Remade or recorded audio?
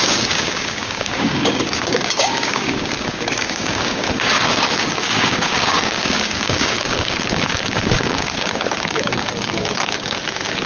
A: remade